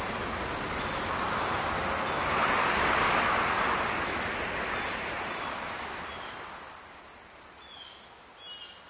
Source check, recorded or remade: recorded